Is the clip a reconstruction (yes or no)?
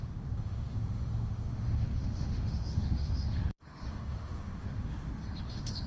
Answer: yes